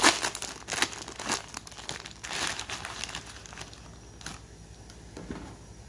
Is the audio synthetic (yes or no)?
no